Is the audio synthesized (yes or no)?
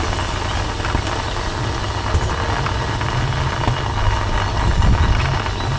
no